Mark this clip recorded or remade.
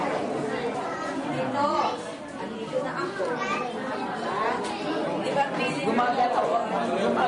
recorded